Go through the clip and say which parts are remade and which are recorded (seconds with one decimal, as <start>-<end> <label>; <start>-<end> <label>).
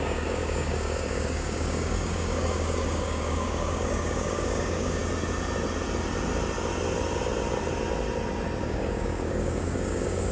0.0-5.0 remade; 5.0-8.6 recorded; 8.6-10.3 remade